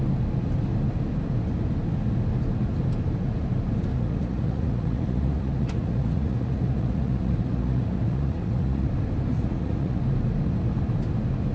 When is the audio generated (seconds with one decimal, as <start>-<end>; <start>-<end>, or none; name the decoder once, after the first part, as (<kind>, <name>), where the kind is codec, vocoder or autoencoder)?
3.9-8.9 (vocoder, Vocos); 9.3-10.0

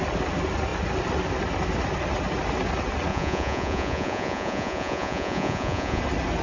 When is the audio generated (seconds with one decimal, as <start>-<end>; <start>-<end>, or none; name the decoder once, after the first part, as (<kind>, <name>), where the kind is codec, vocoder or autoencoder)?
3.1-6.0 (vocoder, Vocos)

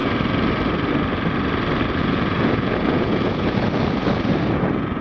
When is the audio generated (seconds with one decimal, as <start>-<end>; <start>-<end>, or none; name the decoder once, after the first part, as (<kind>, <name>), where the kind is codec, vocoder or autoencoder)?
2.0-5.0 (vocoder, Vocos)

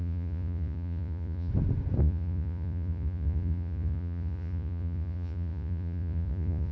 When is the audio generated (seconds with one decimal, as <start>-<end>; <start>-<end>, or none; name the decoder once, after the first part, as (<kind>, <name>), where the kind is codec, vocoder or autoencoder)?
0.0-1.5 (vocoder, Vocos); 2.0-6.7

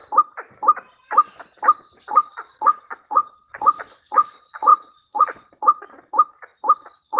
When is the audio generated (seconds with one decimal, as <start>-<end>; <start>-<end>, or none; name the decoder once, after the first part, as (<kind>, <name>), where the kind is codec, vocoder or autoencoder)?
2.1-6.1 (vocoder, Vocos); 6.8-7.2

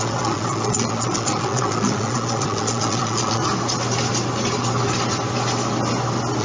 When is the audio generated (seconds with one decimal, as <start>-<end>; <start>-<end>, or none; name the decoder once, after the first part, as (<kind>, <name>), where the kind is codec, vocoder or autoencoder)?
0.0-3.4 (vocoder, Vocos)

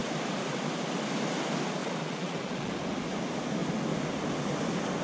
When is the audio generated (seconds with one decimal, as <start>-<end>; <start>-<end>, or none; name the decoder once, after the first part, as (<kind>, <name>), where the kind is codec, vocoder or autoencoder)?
1.8-2.7 (vocoder, Vocos)

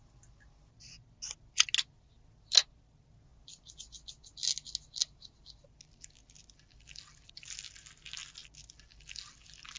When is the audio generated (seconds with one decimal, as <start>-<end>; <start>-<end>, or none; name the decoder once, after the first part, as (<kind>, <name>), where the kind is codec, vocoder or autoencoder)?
none